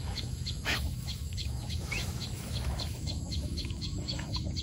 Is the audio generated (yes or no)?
yes